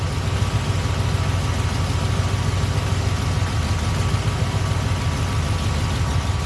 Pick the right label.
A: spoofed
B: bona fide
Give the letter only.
B